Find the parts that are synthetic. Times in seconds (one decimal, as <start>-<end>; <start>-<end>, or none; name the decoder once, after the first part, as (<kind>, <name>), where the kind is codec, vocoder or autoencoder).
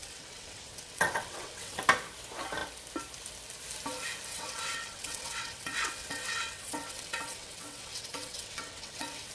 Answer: 0.0-1.8 (vocoder, WaveNeXt); 4.3-9.3